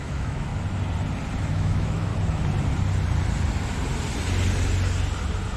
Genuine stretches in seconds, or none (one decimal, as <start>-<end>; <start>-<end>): 0.5-1.5; 2.1-5.6

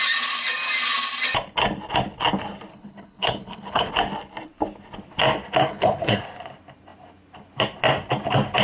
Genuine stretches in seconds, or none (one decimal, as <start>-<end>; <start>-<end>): 0.0-2.7; 3.9-5.6; 6.2-8.6

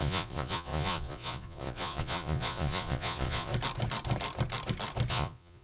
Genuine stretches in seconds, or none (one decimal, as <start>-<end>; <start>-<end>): 3.5-5.1

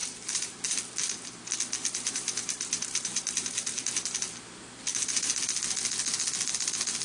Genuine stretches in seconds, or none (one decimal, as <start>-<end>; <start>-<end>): 0.8-1.8; 4.3-4.9; 5.4-7.0